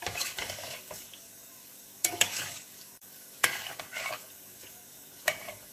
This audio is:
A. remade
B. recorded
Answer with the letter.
A